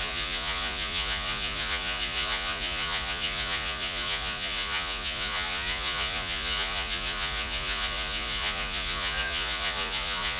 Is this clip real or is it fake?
fake